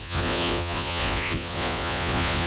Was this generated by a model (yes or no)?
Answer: yes